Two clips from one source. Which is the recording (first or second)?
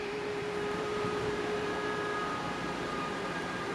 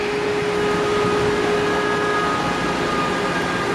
second